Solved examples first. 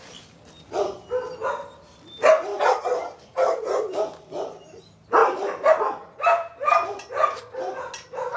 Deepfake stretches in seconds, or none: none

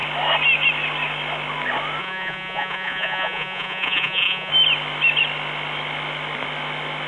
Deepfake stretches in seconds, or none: 2.0-4.5 (vocoder, Vocos)

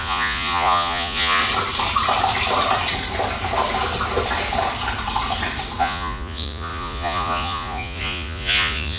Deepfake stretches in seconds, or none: 0.0-1.4 (vocoder, Vocos); 5.8-9.0